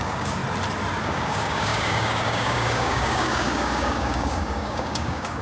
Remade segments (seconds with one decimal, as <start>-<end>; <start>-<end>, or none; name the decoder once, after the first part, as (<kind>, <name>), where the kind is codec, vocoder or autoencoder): 0.0-0.4 (codec, DAC); 1.0-5.4